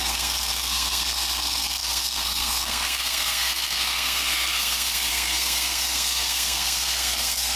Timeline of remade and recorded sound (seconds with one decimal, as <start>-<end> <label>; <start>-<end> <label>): 0.0-7.6 remade